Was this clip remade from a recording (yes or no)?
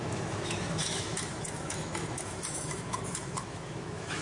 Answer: yes